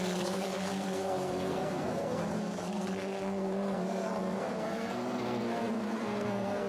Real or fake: fake